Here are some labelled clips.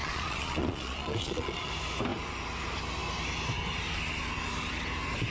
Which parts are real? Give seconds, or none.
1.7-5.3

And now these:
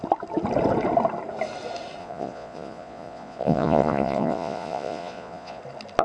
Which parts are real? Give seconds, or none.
0.0-2.0; 5.6-6.0

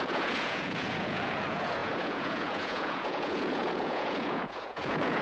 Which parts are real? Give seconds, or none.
none

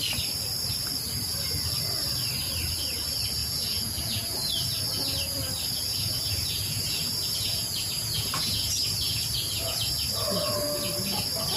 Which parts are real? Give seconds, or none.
0.0-3.4; 4.5-5.9; 9.9-11.6